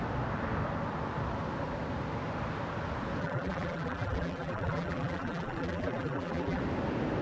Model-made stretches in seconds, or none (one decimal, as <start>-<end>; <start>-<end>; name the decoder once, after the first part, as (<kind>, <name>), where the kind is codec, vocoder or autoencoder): 3.2-6.6 (vocoder, BigVGAN v2)